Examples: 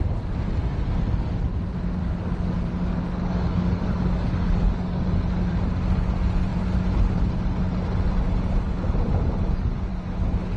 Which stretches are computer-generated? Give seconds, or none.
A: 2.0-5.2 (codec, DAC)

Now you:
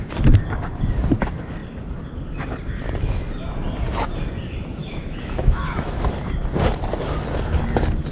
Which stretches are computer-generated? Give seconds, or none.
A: 4.8-6.1 (autoencoder, DAC-VAE)

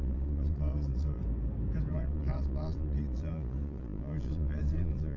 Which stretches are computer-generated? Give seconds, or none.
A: 0.0-1.2 (vocoder, Vocos); 1.9-5.2